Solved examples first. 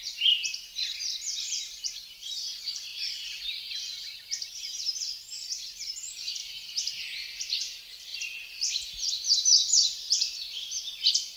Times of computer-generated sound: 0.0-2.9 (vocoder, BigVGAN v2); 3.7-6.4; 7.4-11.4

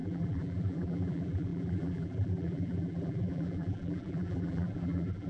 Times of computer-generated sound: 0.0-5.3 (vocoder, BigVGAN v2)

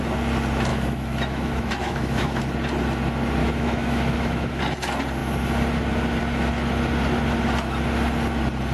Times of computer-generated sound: 0.7-2.4 (autoencoder, DAC-VAE); 3.4-4.6

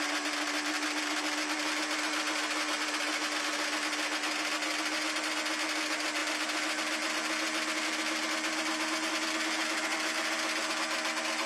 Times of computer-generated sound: none